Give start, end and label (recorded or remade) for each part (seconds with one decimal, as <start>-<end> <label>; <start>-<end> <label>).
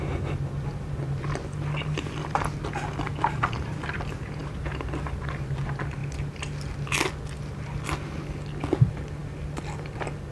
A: 0.0-4.4 recorded; 4.4-5.2 remade; 5.2-10.3 recorded